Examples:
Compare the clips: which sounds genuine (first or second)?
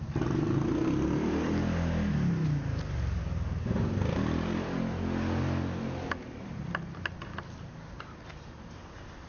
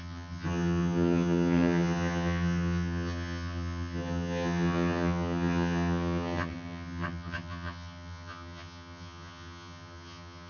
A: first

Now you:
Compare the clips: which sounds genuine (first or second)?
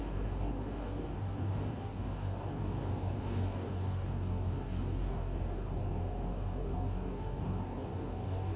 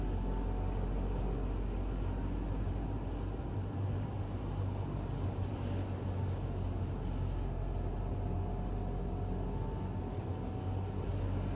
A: second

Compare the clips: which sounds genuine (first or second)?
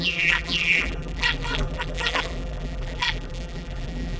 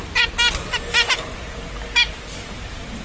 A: second